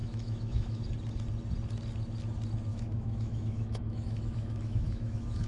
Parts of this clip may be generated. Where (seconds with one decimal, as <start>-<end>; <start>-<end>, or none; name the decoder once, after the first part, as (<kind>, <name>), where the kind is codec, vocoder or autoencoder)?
0.0-0.8 (autoencoder, DAC-VAE); 2.7-5.5